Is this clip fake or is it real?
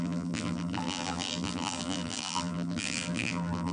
fake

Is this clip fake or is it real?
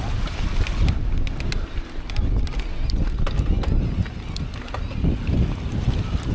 real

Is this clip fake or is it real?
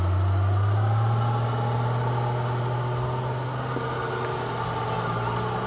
real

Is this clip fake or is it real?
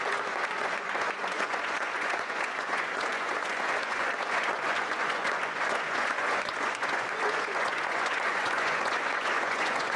fake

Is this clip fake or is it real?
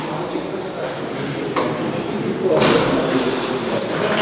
fake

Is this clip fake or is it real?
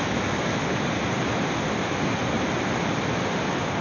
real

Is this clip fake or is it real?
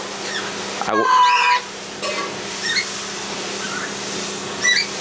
real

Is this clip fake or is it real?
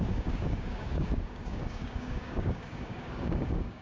fake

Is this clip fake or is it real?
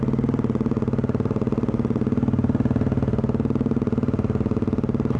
real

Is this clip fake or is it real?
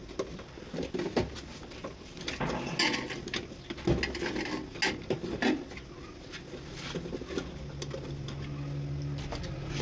real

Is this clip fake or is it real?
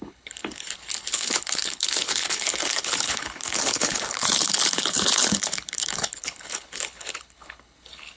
fake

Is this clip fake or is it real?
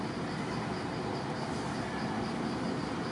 real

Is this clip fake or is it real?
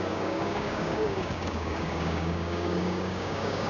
fake